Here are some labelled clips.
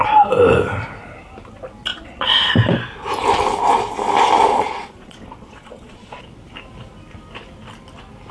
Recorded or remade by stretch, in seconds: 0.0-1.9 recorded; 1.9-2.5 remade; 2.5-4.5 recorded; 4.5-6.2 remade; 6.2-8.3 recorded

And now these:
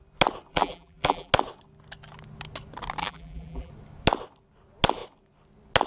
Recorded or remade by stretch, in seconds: 0.0-0.5 recorded; 0.5-1.3 remade; 1.3-3.0 recorded; 3.0-3.7 remade; 3.7-5.9 recorded

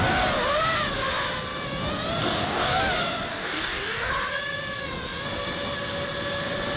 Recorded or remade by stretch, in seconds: 0.0-2.2 recorded; 2.2-2.7 remade; 2.7-3.3 recorded; 3.3-4.1 remade; 4.1-6.8 recorded

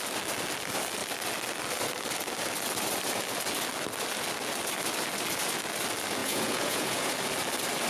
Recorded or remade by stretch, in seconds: 0.0-6.2 recorded; 6.2-7.1 remade; 7.1-7.9 recorded

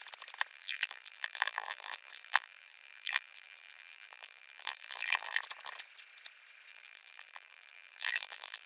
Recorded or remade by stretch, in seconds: 0.0-0.5 recorded; 0.5-5.4 remade; 5.4-6.7 recorded; 6.7-8.7 remade

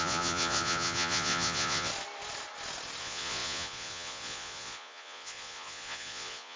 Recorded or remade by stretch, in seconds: 0.0-1.9 remade; 1.9-3.0 recorded; 3.0-6.6 remade